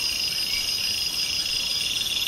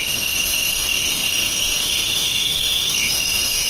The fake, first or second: second